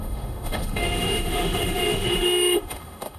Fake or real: fake